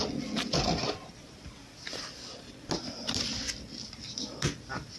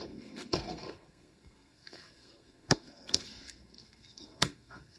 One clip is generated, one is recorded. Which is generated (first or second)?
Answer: second